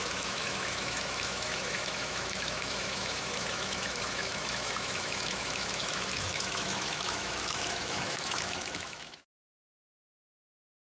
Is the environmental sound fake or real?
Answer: fake